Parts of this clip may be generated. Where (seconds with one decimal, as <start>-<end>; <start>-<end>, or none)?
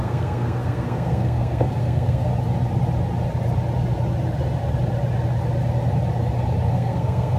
0.0-2.3; 6.7-7.4